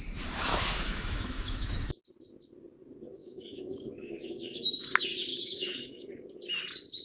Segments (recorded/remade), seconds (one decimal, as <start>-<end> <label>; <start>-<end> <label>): 0.0-0.5 recorded; 0.5-2.0 remade; 2.0-3.2 recorded; 3.2-4.7 remade; 4.7-5.3 recorded; 5.3-6.1 remade; 6.1-7.0 recorded